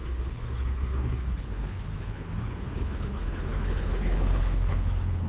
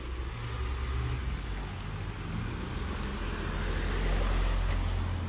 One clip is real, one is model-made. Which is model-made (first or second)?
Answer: first